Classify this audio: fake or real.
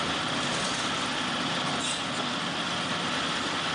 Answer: real